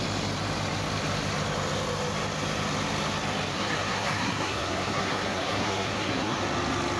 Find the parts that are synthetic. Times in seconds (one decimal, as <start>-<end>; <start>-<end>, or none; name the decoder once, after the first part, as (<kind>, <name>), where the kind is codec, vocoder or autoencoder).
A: 3.5-6.4 (codec, SNAC)